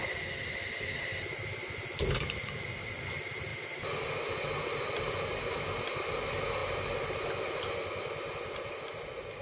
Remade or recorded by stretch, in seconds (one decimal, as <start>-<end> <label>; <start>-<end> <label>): 0.0-9.4 recorded